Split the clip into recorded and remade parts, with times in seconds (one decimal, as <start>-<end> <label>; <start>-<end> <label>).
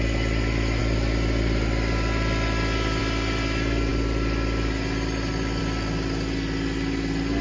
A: 0.0-7.4 recorded